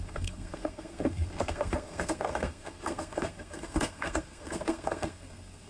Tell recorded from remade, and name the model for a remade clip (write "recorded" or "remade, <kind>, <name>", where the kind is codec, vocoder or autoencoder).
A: remade, codec, SNAC